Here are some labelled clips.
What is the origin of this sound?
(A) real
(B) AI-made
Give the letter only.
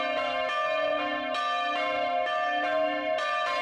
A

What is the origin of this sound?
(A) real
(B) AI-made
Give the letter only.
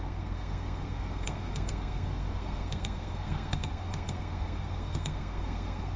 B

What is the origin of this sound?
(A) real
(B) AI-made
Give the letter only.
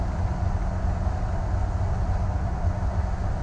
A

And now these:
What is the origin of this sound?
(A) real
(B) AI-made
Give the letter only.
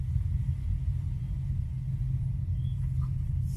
A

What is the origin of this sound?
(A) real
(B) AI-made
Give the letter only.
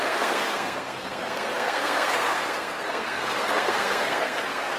B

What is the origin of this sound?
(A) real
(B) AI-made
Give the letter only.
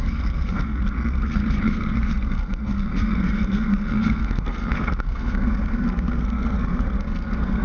B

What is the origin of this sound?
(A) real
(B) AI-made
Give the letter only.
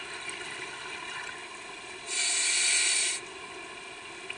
A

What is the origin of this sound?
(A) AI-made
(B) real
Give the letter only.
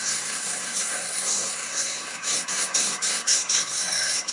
A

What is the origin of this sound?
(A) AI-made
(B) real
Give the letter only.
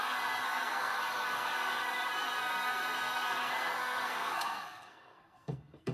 A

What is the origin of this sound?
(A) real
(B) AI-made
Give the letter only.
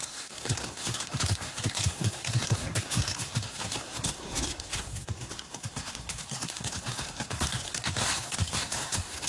B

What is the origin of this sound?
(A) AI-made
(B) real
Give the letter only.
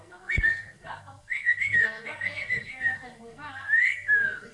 A